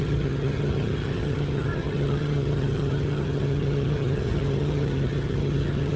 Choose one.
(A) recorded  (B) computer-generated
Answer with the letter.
B